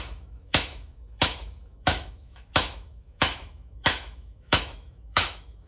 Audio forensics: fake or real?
fake